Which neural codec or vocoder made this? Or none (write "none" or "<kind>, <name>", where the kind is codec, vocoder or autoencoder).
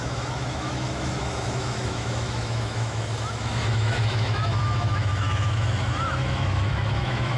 autoencoder, DAC-VAE